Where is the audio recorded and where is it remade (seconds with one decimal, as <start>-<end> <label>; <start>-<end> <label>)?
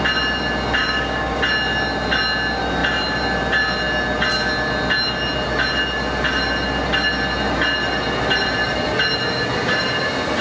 0.0-0.8 recorded; 0.8-1.4 remade; 1.4-10.4 recorded